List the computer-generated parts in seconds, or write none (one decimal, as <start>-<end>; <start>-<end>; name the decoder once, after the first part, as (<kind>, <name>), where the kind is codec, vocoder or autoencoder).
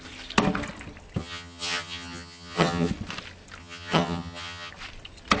1.2-2.9 (vocoder, HiFi-GAN); 3.6-4.7